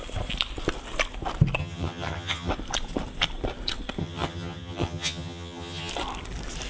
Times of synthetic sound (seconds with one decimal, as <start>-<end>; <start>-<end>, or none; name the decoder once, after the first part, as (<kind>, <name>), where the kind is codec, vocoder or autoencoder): 1.6-2.5 (vocoder, HiFi-GAN); 4.0-5.9